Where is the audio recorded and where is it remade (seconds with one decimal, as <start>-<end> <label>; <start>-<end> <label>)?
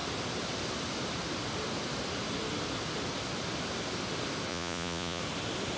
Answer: 0.0-4.5 recorded; 4.5-5.2 remade; 5.2-5.8 recorded